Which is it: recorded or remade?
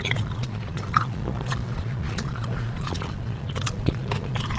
remade